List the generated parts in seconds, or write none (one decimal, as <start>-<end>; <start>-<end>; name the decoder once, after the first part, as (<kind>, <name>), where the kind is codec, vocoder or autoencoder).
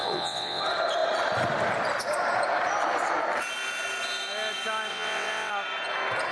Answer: 0.0-0.6 (vocoder, WaveNeXt); 4.9-5.5